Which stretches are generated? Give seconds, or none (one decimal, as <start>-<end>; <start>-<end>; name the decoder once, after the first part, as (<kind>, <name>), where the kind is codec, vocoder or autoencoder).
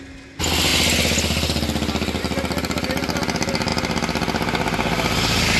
none